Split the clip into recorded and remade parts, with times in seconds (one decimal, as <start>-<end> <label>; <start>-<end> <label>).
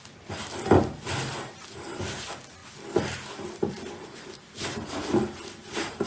0.0-6.1 recorded